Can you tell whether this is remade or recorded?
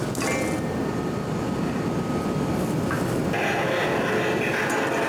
recorded